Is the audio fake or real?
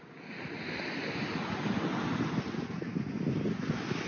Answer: real